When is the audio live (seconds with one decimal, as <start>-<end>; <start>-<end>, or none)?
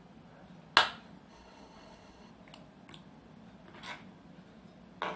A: 0.0-1.3; 2.3-5.2